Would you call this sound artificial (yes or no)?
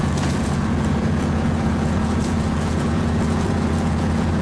yes